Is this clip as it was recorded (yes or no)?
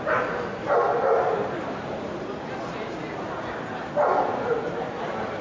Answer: yes